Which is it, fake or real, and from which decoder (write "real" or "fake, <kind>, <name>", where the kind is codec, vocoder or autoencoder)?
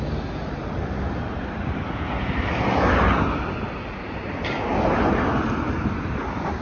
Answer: real